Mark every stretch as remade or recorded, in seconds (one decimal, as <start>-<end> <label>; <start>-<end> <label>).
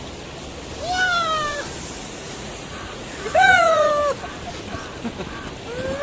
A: 0.0-2.0 recorded; 2.0-3.9 remade; 3.9-6.0 recorded